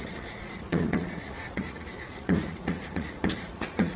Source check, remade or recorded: remade